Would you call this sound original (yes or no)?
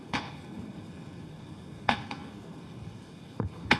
no